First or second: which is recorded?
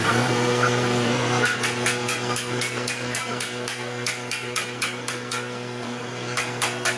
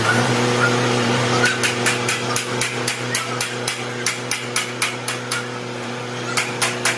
second